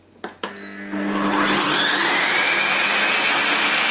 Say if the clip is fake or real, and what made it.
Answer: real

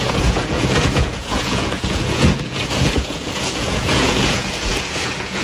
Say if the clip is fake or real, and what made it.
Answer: fake, vocoder, Vocos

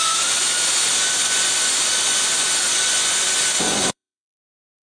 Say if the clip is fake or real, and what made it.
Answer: fake, vocoder, Vocos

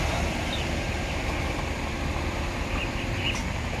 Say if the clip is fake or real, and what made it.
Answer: real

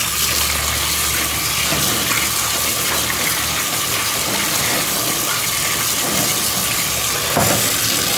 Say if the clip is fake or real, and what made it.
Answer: real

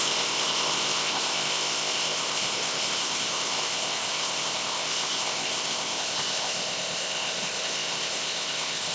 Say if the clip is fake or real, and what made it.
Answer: fake, codec, ZipCodec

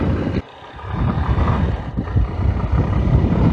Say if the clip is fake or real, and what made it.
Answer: real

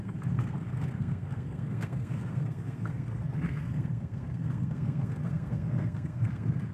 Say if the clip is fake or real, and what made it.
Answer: fake, codec, SNAC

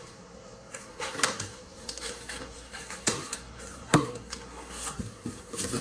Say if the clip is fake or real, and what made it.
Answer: fake, codec, SNAC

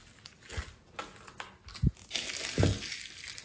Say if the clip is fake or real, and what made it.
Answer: real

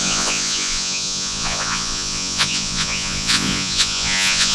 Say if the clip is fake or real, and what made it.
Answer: fake, vocoder, Vocos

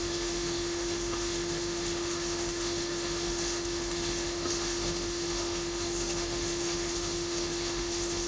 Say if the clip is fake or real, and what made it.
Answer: fake, autoencoder, DAC-VAE